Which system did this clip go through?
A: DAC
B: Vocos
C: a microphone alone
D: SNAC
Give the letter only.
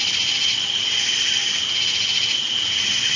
C